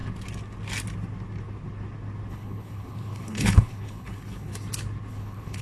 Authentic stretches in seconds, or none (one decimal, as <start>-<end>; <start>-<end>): 0.0-2.3; 4.5-5.1